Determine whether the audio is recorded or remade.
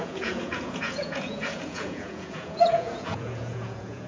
remade